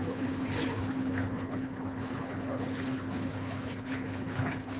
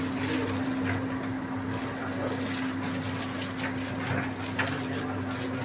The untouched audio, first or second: second